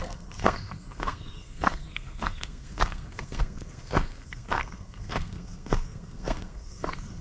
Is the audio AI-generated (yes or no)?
yes